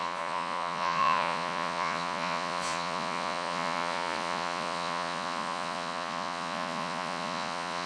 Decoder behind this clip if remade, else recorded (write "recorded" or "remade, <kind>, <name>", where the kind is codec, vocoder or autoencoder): remade, vocoder, Vocos